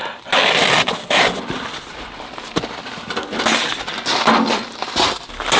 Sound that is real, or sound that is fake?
real